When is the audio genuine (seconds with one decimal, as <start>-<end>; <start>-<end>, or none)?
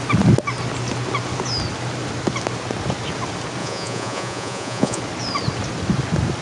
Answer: 0.0-3.6; 5.0-6.4